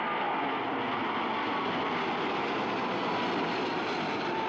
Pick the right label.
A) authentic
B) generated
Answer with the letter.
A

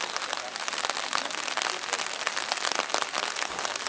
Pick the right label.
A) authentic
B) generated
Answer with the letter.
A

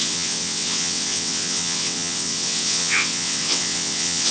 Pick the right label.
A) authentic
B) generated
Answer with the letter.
B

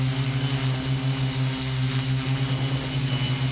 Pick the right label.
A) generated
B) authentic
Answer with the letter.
B